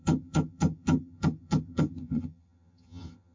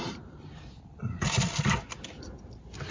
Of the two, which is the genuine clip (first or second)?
second